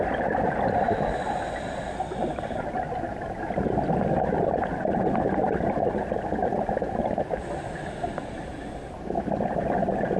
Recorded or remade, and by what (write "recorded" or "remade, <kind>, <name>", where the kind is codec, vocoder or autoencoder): recorded